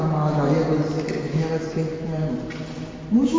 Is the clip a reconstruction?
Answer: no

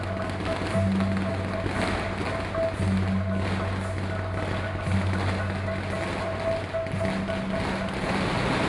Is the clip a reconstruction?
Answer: no